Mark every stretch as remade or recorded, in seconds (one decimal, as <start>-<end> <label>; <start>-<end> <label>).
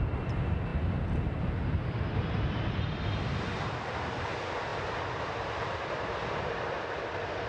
0.0-7.5 recorded